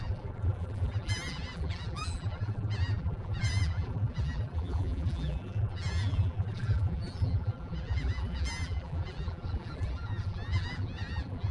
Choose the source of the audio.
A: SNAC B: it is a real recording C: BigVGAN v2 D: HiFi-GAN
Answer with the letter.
C